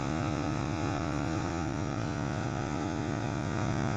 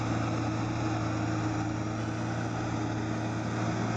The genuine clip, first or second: second